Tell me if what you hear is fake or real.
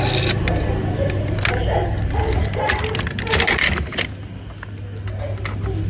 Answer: real